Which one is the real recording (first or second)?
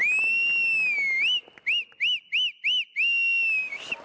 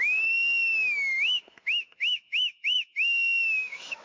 first